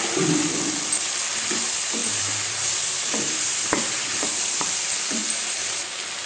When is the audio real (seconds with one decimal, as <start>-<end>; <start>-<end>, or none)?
0.0-2.0; 4.7-5.2; 5.8-6.3